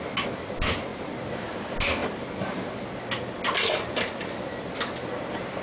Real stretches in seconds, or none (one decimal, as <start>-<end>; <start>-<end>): 0.0-5.6